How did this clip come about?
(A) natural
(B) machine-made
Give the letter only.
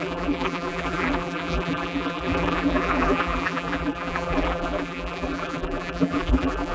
B